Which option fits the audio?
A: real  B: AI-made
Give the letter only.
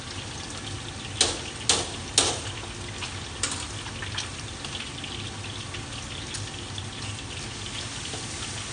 A